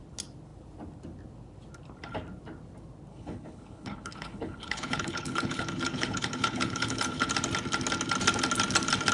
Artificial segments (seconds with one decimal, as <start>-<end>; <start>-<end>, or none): 3.1-7.3